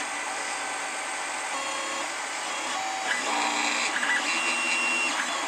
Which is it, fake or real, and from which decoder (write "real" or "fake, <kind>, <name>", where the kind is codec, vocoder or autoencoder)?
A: real